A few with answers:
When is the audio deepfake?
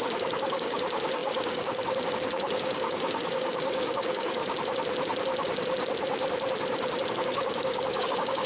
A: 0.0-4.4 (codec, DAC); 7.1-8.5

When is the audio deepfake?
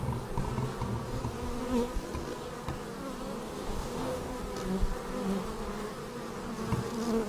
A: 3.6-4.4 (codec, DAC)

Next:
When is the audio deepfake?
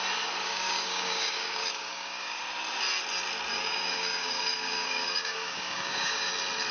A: 0.4-2.4 (codec, DAC); 3.5-6.3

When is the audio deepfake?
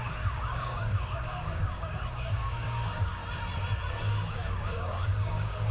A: 0.0-3.2 (codec, DAC); 3.9-5.7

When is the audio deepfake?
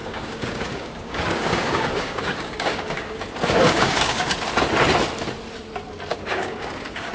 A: 0.0-4.3 (codec, DAC); 6.1-7.1